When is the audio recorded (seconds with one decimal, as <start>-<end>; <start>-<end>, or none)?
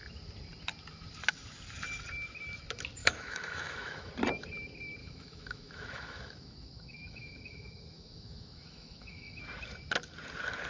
0.0-3.0; 4.1-5.0; 9.4-10.7